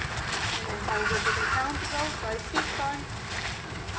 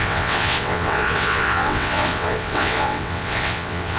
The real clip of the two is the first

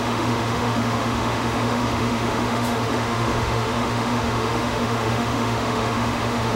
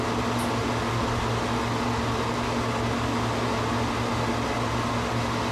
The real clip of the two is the second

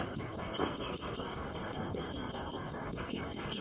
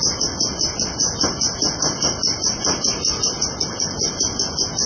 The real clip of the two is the second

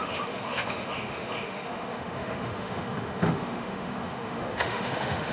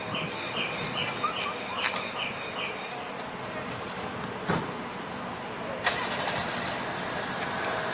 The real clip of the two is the second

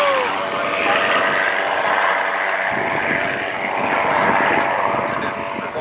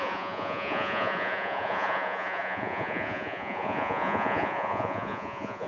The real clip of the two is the first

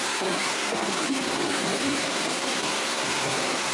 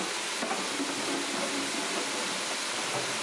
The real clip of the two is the second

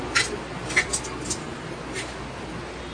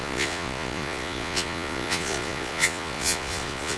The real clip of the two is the first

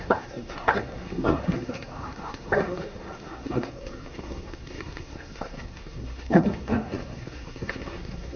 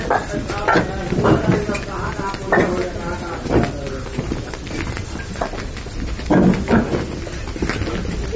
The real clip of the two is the second